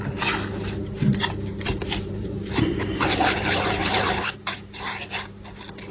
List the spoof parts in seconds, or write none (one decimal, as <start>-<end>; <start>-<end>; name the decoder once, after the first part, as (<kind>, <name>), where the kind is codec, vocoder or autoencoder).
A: 1.8-5.3 (vocoder, BigVGAN v2)